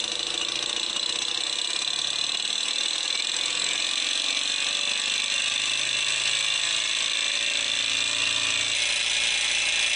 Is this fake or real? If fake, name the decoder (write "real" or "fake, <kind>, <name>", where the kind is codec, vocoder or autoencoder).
real